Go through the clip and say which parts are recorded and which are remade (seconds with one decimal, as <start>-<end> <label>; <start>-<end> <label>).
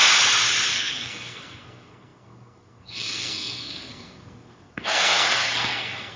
0.0-0.7 recorded; 0.7-6.2 remade